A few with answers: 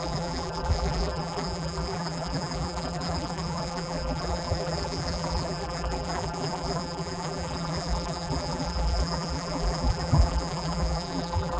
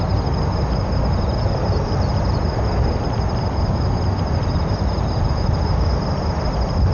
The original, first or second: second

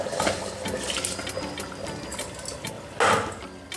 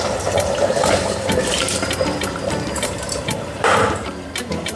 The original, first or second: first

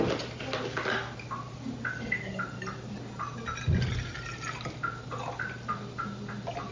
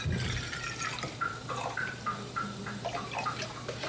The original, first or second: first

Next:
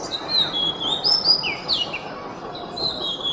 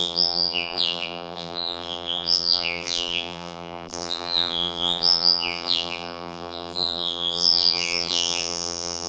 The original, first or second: first